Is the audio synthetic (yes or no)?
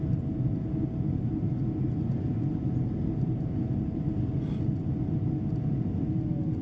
no